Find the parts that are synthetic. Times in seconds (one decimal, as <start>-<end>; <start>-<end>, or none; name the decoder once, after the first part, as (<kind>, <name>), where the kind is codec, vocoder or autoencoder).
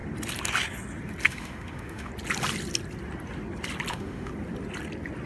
1.3-2.1 (autoencoder, DAC-VAE); 3.9-4.3